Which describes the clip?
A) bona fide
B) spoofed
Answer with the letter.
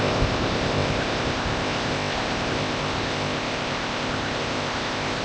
B